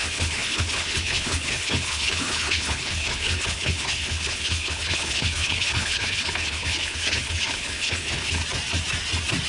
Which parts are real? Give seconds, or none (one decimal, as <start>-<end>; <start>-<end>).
8.4-9.5